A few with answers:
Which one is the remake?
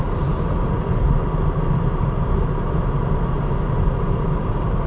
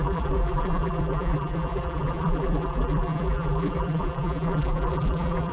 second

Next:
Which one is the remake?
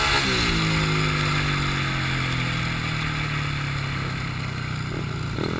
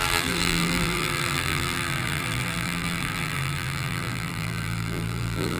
second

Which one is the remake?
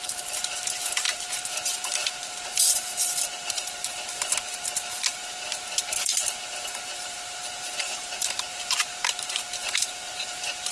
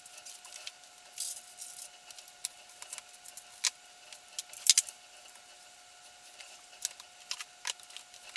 first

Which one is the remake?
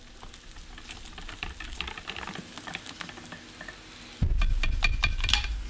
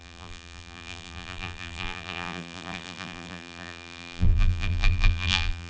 second